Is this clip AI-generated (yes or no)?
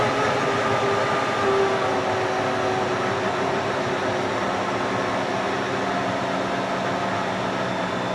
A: no